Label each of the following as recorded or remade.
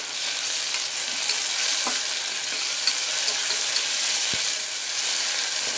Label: recorded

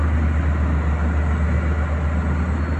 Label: recorded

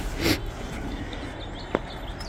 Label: recorded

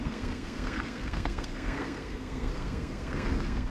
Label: remade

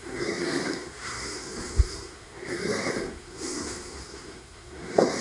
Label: remade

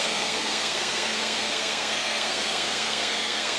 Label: remade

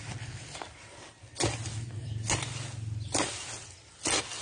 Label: recorded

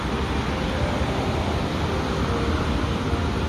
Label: recorded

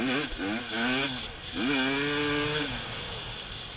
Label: recorded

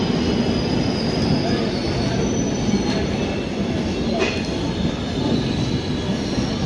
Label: recorded